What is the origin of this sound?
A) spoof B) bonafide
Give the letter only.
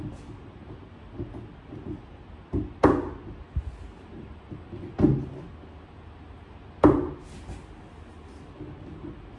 B